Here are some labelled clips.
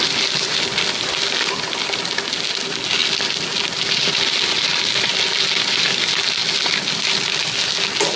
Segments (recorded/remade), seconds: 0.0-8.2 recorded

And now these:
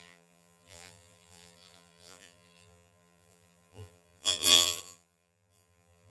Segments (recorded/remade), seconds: 0.0-6.1 remade

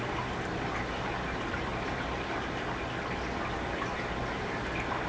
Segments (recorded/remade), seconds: 0.0-1.7 recorded; 1.7-2.5 remade; 2.5-5.1 recorded

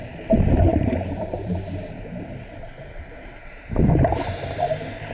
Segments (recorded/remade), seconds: 0.0-0.7 recorded; 0.7-3.8 remade; 3.8-5.1 recorded

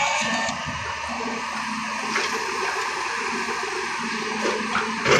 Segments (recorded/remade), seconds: 0.0-5.2 recorded

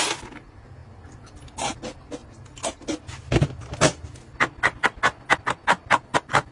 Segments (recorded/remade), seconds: 0.0-6.5 recorded

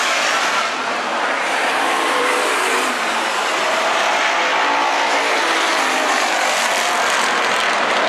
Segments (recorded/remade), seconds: 0.0-3.3 remade; 3.3-8.1 recorded

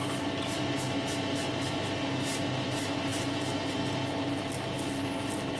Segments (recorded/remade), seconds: 0.0-5.6 recorded